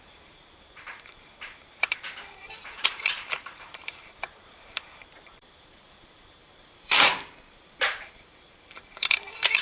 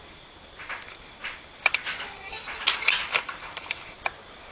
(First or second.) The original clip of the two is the second